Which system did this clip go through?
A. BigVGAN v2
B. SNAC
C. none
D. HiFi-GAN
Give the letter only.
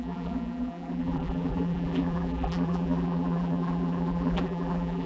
A